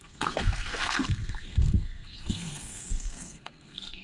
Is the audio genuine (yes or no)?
no